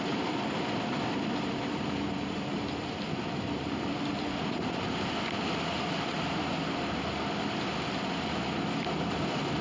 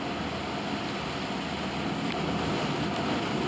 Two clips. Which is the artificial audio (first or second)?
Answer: first